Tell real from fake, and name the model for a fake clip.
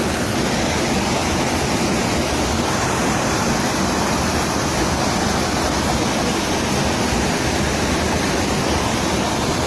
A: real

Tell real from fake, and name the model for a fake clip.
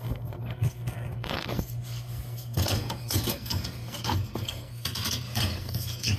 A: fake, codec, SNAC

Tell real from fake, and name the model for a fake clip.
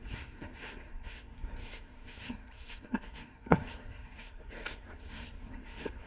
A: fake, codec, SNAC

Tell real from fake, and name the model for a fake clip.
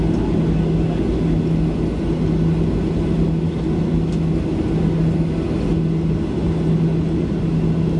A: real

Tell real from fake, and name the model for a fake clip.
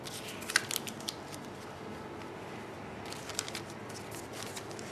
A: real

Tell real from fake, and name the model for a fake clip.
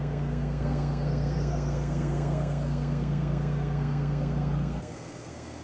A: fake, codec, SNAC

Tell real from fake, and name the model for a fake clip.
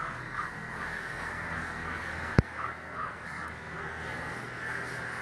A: fake, codec, SNAC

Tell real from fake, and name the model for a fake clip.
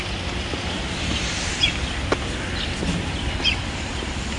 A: real